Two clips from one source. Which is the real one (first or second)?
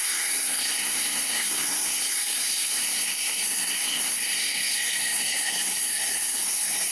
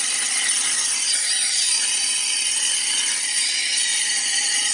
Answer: second